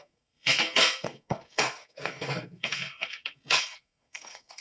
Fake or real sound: fake